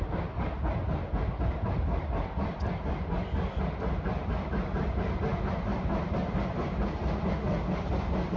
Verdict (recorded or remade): recorded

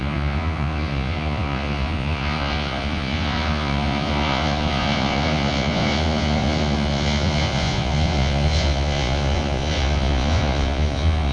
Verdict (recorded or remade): remade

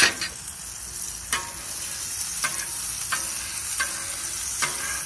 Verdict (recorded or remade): recorded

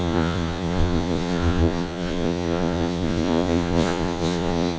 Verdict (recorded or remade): remade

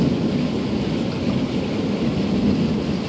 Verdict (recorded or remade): recorded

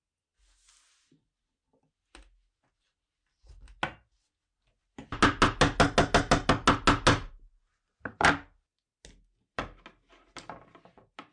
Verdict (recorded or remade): recorded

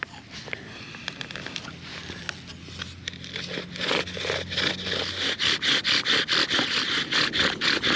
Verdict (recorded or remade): recorded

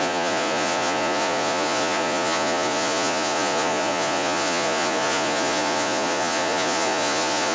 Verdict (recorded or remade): remade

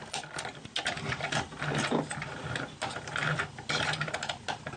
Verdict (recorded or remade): recorded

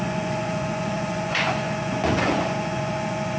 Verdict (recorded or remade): remade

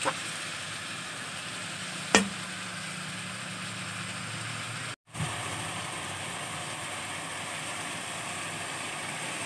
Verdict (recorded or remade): recorded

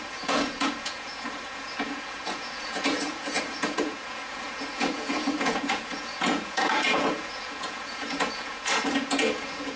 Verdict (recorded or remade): remade